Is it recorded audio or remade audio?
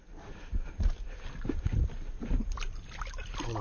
recorded